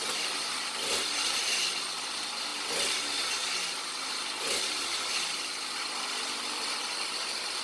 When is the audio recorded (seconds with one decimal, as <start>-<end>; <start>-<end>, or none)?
2.5-4.6